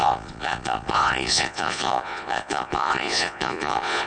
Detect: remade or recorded remade